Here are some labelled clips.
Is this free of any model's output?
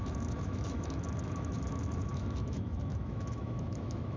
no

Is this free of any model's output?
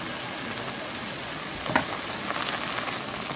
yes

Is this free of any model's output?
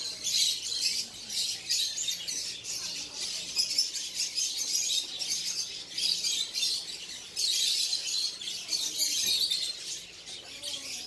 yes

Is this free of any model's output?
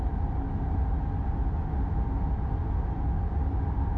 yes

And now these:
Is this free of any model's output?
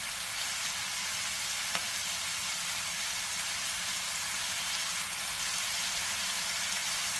no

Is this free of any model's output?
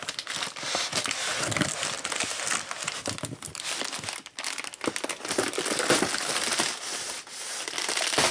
yes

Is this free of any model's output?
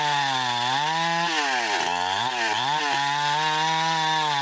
yes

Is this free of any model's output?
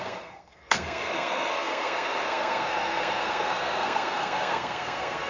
no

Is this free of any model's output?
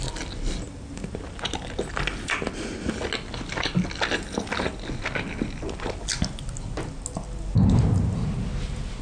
yes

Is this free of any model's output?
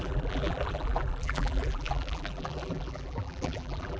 no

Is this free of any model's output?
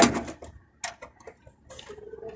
yes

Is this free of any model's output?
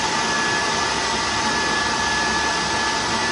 yes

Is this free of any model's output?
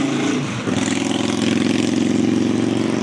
yes